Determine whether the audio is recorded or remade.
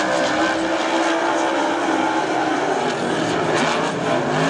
recorded